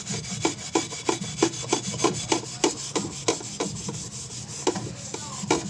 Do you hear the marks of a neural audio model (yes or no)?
no